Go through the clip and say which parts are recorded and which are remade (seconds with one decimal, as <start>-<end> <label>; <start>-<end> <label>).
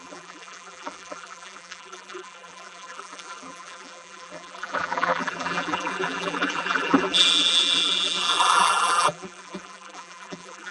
0.0-10.7 remade